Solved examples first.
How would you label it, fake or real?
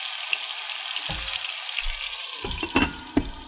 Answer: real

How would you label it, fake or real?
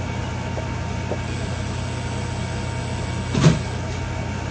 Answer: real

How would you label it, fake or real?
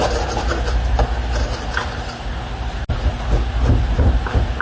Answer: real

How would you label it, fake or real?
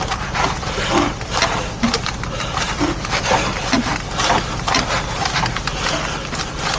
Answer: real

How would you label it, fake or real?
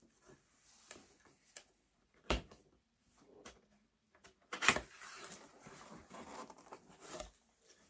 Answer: fake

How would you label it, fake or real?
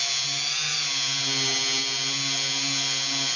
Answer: real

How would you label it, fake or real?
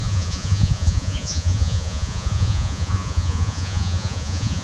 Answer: fake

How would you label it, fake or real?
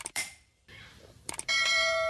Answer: fake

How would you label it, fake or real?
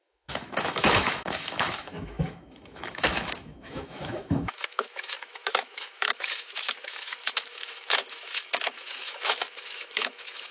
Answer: fake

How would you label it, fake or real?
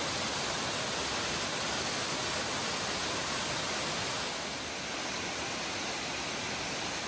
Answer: real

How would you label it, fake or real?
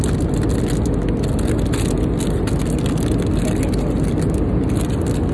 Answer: real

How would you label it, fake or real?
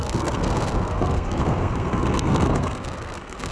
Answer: fake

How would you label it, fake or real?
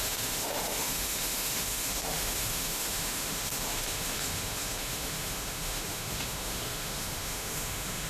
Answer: fake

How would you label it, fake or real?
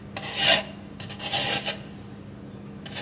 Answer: real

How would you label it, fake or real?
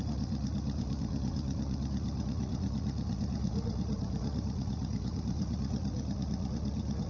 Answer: fake